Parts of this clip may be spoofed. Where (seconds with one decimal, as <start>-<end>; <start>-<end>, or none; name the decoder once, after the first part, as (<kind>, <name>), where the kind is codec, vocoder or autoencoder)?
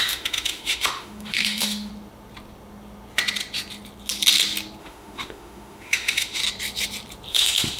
0.0-1.9 (autoencoder, DAC-VAE); 4.8-6.4; 7.3-7.8